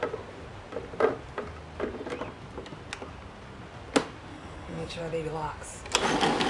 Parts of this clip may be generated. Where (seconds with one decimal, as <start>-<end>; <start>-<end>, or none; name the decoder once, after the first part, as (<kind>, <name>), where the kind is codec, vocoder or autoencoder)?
4.3-5.0 (codec, HILCodec)